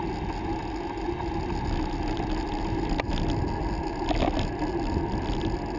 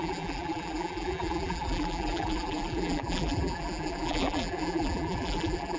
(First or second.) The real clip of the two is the first